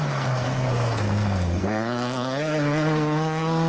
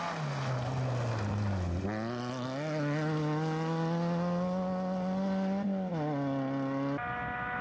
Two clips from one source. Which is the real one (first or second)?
second